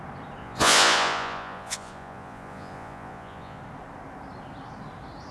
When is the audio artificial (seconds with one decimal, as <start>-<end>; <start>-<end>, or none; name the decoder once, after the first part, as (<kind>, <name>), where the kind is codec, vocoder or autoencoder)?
0.4-3.6 (vocoder, Vocos)